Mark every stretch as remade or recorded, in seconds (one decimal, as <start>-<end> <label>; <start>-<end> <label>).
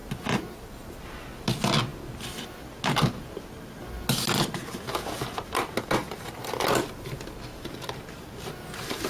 0.0-9.1 recorded